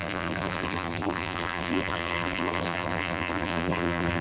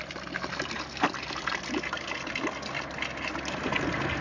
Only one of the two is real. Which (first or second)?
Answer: second